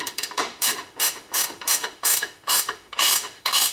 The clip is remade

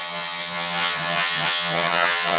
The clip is remade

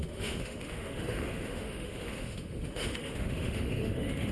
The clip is remade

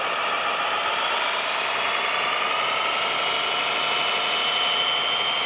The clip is recorded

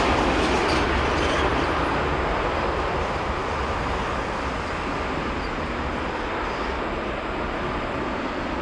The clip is recorded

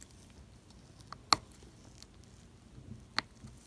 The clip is recorded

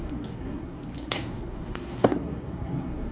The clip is remade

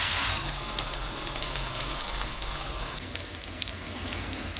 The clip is remade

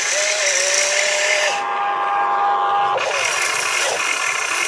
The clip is recorded